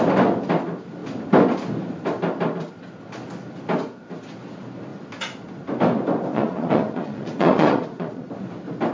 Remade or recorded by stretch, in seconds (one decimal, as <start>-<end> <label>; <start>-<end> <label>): 0.0-6.3 recorded; 6.3-8.3 remade; 8.3-8.9 recorded